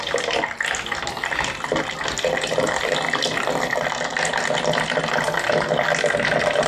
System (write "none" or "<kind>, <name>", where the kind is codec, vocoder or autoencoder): none